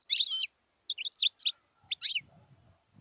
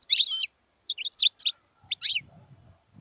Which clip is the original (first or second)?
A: first